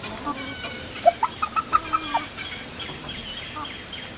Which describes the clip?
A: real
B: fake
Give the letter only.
A